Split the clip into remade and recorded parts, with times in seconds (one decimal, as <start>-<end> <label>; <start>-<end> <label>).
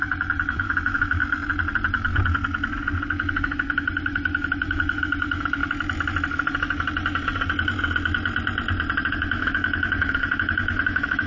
0.0-1.2 remade; 1.2-3.3 recorded; 3.3-5.6 remade; 5.6-9.1 recorded; 9.1-11.3 remade